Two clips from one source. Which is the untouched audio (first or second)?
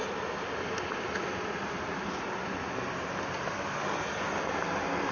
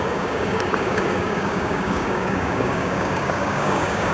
first